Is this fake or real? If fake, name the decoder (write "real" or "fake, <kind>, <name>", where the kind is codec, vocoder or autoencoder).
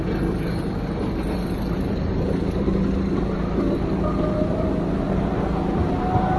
real